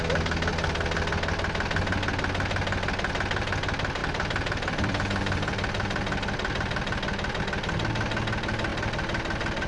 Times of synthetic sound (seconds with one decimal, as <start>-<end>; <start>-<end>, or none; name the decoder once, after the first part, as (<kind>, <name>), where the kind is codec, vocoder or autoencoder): 4.0-7.4 (vocoder, BigVGAN v2); 8.7-9.7